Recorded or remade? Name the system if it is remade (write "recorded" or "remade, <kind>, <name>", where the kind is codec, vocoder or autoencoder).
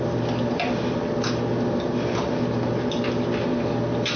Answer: recorded